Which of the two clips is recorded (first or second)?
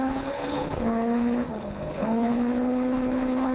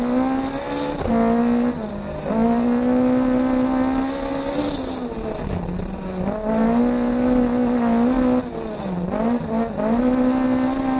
second